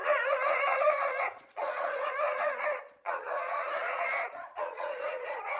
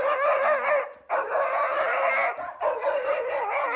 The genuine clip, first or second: second